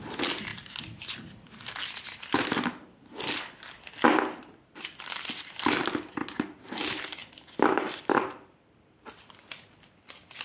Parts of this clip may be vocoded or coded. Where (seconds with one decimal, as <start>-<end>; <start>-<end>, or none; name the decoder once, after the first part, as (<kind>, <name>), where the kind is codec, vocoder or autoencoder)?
none